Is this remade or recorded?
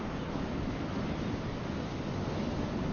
recorded